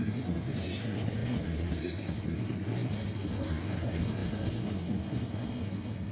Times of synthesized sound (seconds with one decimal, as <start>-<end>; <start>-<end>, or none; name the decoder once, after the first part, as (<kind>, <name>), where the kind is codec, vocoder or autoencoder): 0.0-6.1 (codec, SNAC)